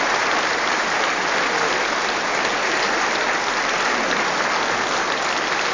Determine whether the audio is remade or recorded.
recorded